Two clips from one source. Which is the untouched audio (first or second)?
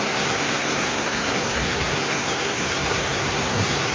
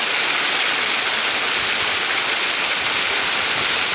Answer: second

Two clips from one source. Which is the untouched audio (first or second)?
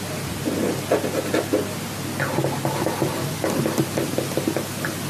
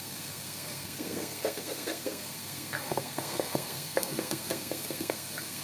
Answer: first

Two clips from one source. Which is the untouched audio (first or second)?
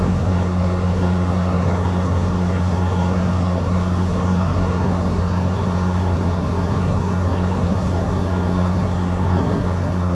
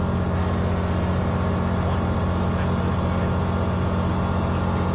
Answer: second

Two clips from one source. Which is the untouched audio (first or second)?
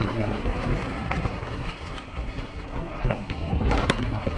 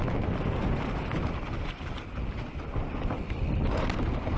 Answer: second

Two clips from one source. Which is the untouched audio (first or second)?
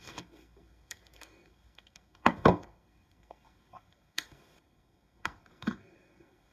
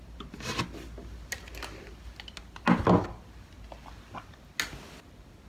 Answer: second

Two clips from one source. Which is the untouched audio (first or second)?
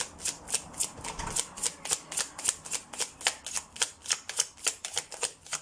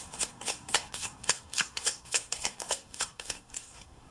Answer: first